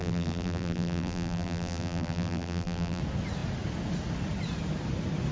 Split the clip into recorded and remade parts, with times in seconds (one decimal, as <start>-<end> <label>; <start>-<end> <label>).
0.0-3.0 remade; 3.0-5.3 recorded